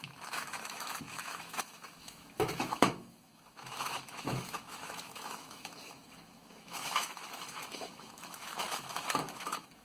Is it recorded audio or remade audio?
remade